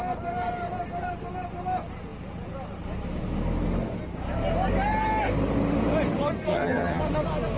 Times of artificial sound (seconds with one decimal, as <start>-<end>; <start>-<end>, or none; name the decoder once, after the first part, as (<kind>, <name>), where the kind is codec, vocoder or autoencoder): 6.5-7.0 (vocoder, HiFi-GAN)